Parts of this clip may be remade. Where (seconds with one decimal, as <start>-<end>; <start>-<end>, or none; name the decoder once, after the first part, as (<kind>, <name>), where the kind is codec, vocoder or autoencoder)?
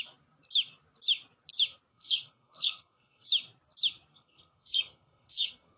1.9-3.3 (codec, SNAC); 4.1-5.8